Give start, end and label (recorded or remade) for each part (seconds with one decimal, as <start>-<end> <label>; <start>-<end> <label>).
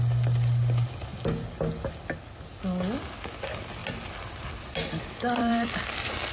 0.0-3.8 recorded; 3.8-6.3 remade